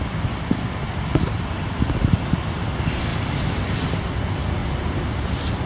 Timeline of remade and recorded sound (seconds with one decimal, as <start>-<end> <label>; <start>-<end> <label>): 0.0-1.1 recorded; 1.1-1.6 remade; 1.6-3.1 recorded; 3.1-3.8 remade; 3.8-4.6 recorded; 4.6-5.7 remade